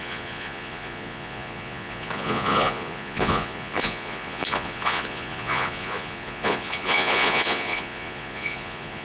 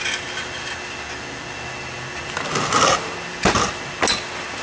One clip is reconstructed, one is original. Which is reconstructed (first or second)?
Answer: first